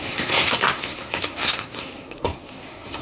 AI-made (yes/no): yes